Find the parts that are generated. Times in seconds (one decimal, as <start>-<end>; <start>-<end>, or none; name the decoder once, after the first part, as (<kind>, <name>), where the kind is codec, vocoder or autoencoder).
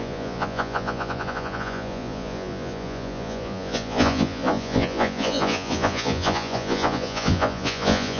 0.0-8.2 (vocoder, Vocos)